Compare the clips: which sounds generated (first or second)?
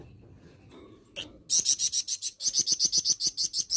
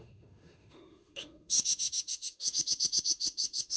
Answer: second